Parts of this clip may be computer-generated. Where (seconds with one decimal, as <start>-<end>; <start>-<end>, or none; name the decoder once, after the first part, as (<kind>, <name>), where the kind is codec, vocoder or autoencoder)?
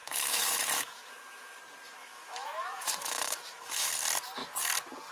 0.0-1.6 (autoencoder, DAC-VAE); 2.0-3.9